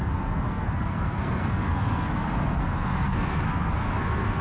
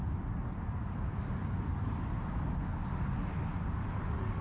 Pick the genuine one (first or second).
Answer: second